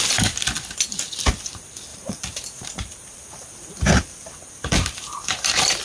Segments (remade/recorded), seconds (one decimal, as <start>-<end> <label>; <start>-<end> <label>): 0.0-1.9 recorded; 1.9-5.8 remade